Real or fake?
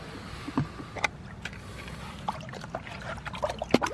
real